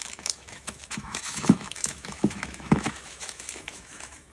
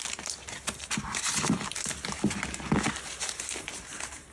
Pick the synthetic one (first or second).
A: first